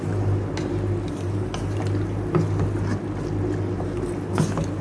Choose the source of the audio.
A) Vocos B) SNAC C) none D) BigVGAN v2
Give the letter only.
C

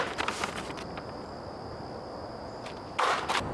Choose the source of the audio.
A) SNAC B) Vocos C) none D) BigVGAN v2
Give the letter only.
C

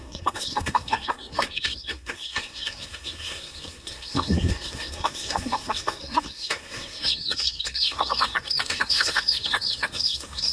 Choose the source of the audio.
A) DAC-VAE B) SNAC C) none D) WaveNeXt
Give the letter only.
B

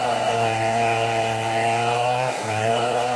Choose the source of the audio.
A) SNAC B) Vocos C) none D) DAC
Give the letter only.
A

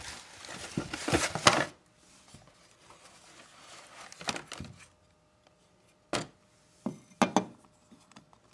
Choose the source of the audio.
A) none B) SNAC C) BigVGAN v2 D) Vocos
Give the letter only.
A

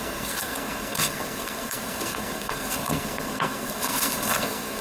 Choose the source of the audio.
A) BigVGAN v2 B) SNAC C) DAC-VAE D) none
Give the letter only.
B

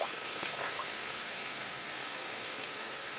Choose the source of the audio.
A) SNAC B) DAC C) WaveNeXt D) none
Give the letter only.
A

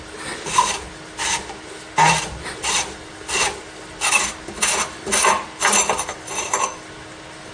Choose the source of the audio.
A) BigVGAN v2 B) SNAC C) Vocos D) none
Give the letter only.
D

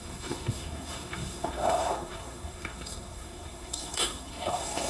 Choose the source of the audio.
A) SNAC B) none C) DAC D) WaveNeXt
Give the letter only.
A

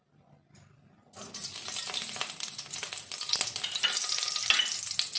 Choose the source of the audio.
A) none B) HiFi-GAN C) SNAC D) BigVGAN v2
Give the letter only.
A